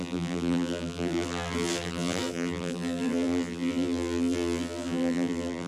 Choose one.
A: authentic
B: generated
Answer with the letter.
B